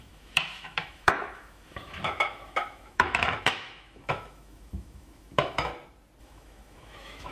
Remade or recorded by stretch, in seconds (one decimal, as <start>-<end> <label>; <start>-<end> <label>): 0.0-5.7 remade; 5.7-6.2 recorded; 6.2-7.3 remade